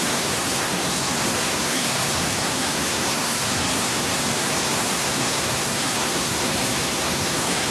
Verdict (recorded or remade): remade